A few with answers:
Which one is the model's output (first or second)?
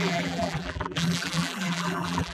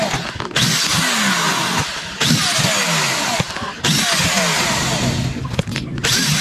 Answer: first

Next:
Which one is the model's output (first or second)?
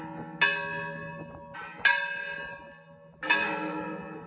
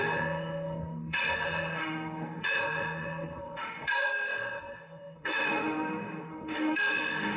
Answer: second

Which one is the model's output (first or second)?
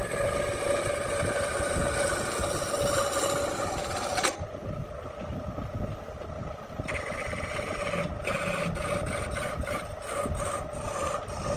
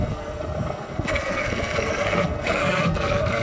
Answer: second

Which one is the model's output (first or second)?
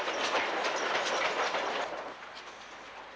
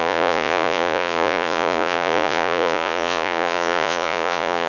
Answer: second